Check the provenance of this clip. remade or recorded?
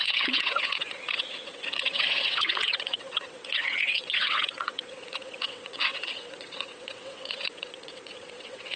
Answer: remade